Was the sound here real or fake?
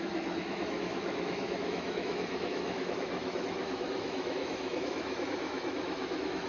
fake